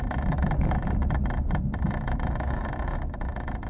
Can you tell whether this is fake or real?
fake